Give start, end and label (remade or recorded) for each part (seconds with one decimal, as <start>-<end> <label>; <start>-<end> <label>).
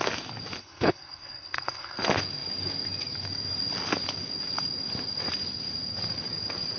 0.0-0.6 recorded; 0.6-2.0 remade; 2.0-6.8 recorded